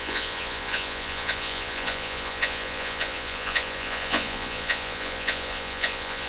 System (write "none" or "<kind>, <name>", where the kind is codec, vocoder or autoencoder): vocoder, Vocos